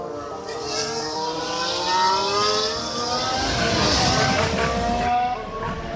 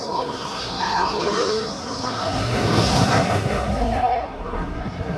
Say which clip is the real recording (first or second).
first